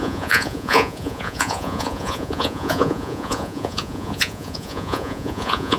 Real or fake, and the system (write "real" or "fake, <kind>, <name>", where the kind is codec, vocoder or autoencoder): fake, vocoder, Vocos